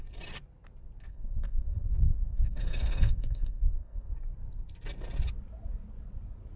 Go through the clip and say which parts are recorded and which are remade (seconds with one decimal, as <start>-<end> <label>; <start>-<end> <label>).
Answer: 0.0-1.1 recorded; 1.1-4.1 remade; 4.1-6.6 recorded